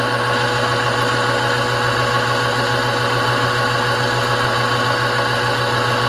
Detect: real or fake real